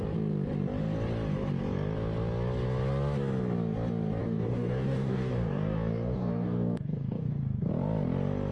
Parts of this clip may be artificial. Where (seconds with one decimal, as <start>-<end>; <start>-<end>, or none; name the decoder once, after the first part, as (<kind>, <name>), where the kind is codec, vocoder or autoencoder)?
4.2-7.7 (codec, DAC)